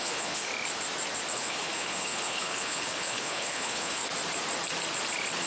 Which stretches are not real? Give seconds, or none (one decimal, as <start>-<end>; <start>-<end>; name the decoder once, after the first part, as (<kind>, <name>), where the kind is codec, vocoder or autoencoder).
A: 0.0-0.5 (codec, HILCodec); 1.3-4.0